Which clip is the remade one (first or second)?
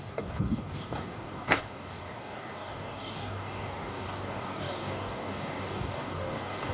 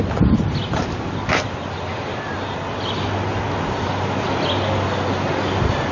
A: first